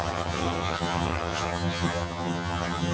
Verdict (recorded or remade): remade